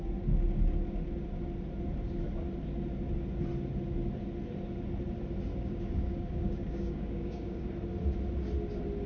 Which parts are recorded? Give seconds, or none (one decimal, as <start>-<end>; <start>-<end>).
0.0-5.5; 7.7-9.1